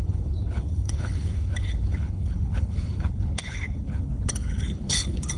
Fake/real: fake